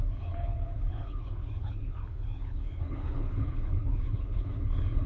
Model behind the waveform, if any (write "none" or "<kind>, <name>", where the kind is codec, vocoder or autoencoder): codec, HILCodec